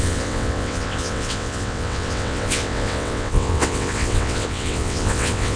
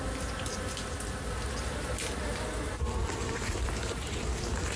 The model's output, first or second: first